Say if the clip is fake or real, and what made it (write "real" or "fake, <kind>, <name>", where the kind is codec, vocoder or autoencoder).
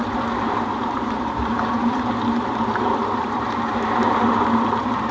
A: fake, vocoder, BigVGAN v2